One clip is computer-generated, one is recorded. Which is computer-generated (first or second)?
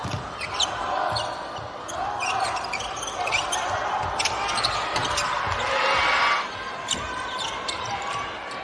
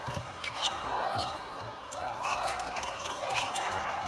second